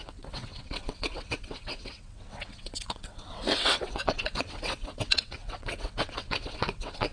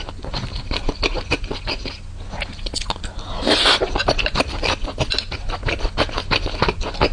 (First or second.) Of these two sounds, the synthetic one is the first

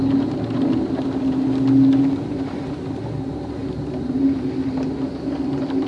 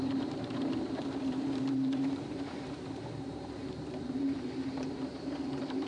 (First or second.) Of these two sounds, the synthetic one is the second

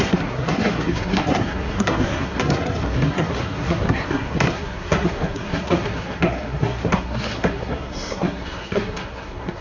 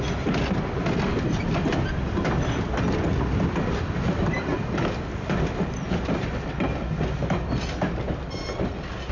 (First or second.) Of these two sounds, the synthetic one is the first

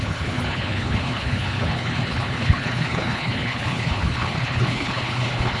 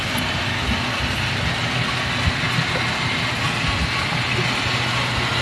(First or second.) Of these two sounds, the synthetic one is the first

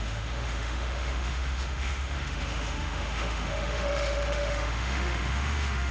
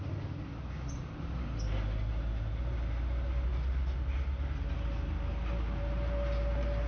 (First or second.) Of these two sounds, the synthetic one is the first